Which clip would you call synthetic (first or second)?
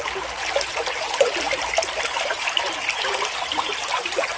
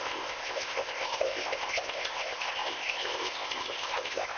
second